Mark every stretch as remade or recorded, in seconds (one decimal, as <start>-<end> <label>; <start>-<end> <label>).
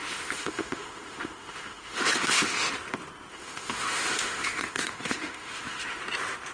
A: 0.0-2.7 remade; 2.7-3.3 recorded; 3.3-6.0 remade; 6.0-6.5 recorded